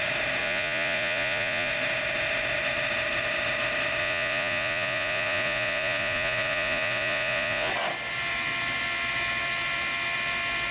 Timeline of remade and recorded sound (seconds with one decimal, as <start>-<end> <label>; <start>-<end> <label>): 0.0-0.4 recorded; 0.4-1.7 remade; 1.7-4.0 recorded; 4.0-7.7 remade; 7.7-10.7 recorded